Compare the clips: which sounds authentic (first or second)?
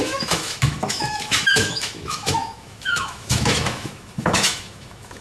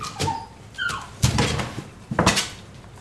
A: second